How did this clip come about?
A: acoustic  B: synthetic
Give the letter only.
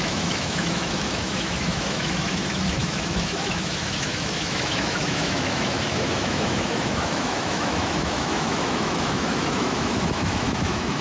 B